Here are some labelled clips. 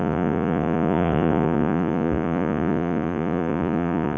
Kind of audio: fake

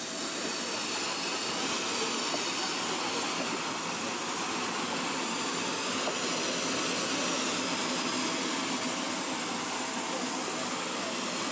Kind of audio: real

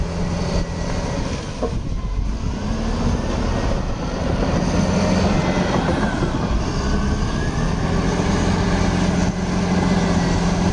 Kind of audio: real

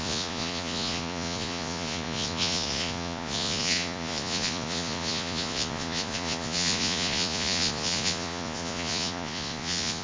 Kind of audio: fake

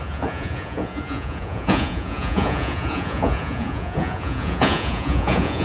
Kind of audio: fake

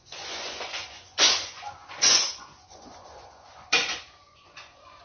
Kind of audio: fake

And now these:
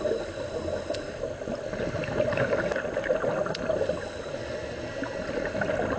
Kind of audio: real